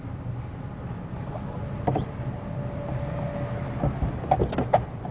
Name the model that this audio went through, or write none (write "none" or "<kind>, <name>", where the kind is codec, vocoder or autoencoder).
none